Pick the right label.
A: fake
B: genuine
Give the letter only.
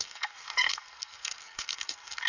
A